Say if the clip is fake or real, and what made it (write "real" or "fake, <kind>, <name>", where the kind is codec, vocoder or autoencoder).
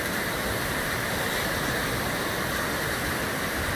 real